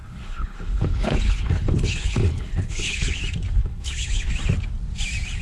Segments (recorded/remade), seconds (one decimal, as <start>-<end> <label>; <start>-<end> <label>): 0.0-3.2 remade; 3.2-3.6 recorded; 3.6-4.3 remade; 4.3-5.4 recorded